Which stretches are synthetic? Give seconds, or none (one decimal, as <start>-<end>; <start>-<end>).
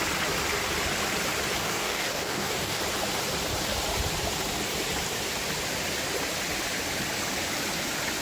1.6-2.8